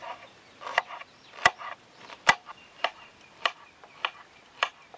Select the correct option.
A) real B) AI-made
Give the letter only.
B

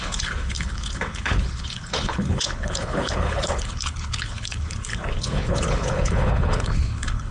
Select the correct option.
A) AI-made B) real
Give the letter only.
A